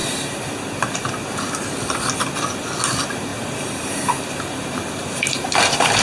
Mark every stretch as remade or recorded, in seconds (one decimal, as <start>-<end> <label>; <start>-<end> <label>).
0.0-1.1 remade; 1.1-3.3 recorded; 3.3-5.5 remade; 5.5-6.0 recorded